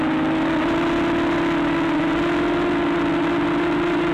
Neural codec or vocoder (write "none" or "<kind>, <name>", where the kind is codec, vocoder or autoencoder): none